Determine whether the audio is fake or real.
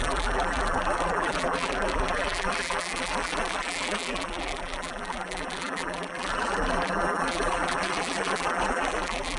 fake